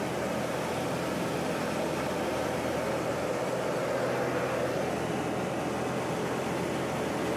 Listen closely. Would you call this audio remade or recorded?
recorded